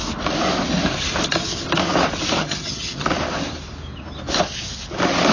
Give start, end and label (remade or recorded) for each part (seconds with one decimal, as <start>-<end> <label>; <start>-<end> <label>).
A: 0.0-2.4 recorded; 2.4-3.1 remade; 3.1-5.3 recorded